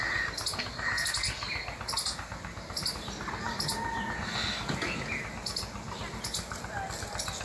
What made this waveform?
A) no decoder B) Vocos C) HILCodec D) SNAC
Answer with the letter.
A